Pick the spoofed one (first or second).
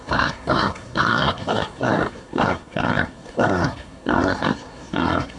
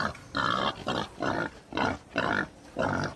first